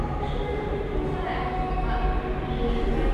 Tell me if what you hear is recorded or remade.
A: recorded